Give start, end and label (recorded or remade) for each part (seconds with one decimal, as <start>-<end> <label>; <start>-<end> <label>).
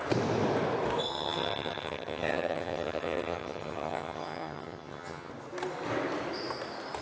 0.0-1.1 recorded; 1.1-5.3 remade; 5.3-7.0 recorded